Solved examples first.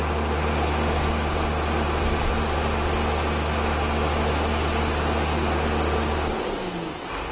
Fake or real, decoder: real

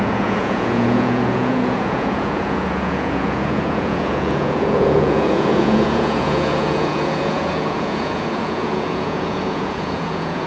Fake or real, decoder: fake, vocoder, Vocos